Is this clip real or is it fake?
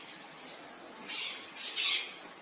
real